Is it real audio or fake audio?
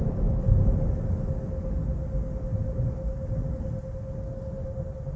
real